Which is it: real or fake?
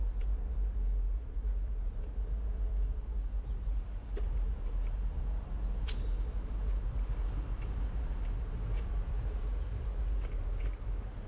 real